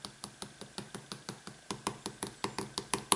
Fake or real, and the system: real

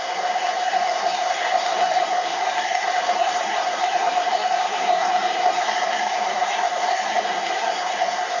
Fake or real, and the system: fake, codec, SNAC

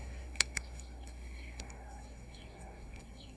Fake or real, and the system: fake, codec, SNAC